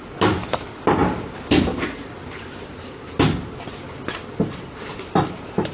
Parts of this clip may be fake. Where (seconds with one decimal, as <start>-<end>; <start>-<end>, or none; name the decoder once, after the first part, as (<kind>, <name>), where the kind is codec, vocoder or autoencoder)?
none